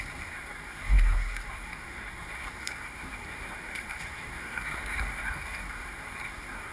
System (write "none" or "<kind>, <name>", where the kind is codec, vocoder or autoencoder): codec, SNAC